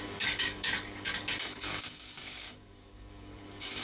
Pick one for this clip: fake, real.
fake